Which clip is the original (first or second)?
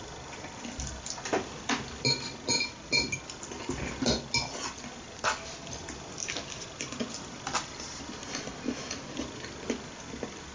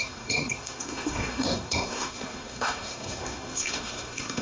first